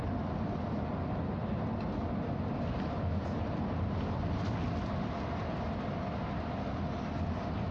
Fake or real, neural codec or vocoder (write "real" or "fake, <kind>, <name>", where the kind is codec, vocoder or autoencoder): real